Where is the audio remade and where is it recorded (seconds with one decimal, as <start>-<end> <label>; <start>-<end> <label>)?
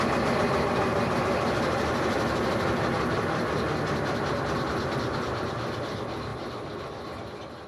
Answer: 0.0-7.7 recorded